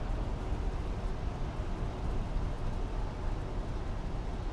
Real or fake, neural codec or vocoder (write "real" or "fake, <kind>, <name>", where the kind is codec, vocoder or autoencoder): real